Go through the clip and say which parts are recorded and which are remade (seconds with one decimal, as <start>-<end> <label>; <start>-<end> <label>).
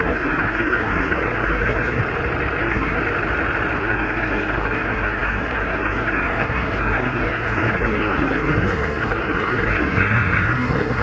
0.0-2.0 remade; 2.0-2.6 recorded; 2.6-3.0 remade; 3.0-3.8 recorded; 3.8-11.0 remade